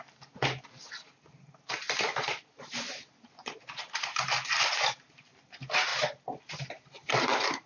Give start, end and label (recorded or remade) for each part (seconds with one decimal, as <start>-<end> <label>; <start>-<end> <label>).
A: 0.0-2.1 recorded; 2.1-2.7 remade; 2.7-3.2 recorded; 3.2-4.2 remade; 4.2-7.7 recorded